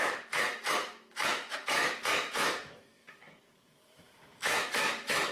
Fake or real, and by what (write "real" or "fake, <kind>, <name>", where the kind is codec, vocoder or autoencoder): fake, autoencoder, DAC-VAE